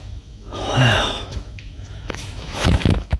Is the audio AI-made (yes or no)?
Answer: yes